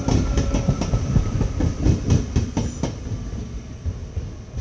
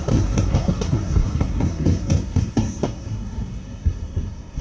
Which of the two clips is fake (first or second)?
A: second